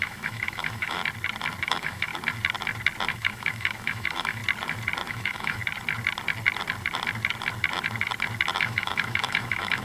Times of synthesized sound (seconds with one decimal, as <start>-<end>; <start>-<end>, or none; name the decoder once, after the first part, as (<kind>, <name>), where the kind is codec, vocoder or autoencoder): 0.0-1.0 (autoencoder, DAC-VAE); 1.6-2.1; 3.1-4.4; 5.1-5.6; 8.6-9.8